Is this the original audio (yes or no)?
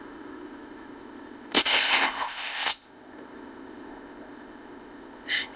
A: no